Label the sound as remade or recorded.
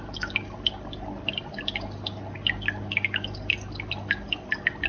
recorded